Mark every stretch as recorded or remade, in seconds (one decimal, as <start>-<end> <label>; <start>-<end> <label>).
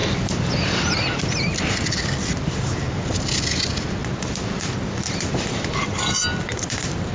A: 0.0-2.8 remade; 2.8-4.0 recorded; 4.0-7.1 remade